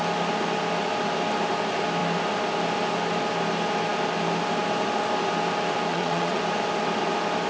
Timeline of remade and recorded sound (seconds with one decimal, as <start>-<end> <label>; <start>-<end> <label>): 0.0-5.9 recorded; 5.9-6.4 remade; 6.4-7.5 recorded